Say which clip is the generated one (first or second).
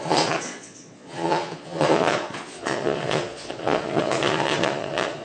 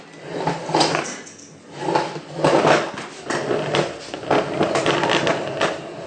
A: first